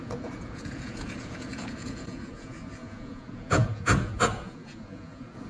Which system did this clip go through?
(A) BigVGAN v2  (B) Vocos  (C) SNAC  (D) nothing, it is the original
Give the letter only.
B